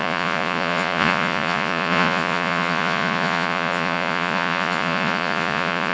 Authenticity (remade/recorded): remade